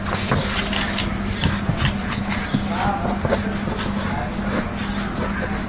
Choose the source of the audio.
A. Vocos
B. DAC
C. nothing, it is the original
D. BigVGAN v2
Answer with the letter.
C